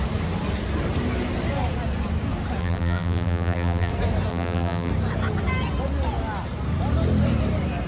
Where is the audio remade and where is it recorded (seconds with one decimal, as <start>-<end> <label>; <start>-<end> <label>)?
0.0-2.6 recorded; 2.6-3.9 remade; 3.9-4.3 recorded; 4.3-4.9 remade; 4.9-7.9 recorded